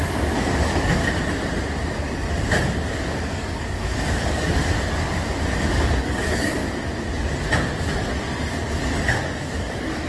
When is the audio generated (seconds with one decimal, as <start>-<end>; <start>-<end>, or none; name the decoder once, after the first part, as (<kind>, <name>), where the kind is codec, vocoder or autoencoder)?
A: 0.0-1.0 (codec, DAC); 2.9-4.7; 5.6-6.6; 9.4-10.1